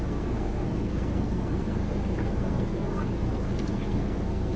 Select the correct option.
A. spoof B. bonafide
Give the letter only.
A